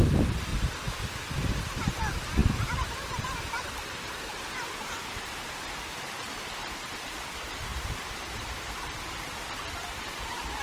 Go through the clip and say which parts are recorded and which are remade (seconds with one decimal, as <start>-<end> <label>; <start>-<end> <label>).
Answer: 0.0-10.6 remade